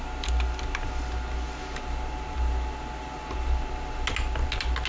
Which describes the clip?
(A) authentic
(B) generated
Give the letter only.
A